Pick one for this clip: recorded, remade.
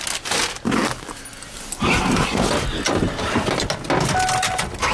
recorded